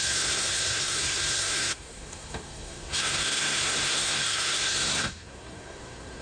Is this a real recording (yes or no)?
no